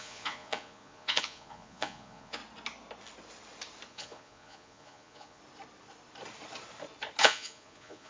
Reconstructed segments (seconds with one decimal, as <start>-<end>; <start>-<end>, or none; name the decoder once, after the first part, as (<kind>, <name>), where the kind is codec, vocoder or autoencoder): 0.0-2.4 (vocoder, Vocos); 3.9-5.4; 7.2-8.1